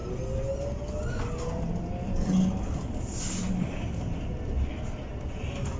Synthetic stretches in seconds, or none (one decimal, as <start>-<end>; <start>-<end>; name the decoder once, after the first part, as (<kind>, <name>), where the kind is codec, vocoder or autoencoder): none